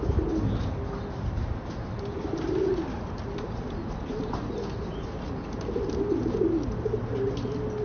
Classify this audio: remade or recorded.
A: recorded